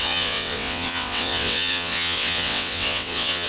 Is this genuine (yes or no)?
no